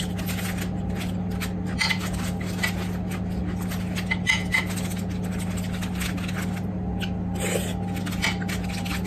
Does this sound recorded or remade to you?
recorded